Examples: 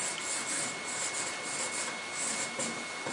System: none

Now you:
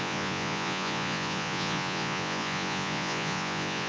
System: vocoder, Vocos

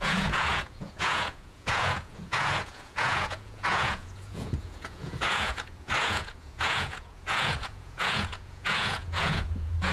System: vocoder, Vocos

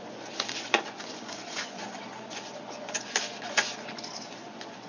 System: vocoder, Vocos